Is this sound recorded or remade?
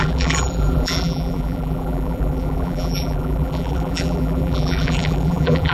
remade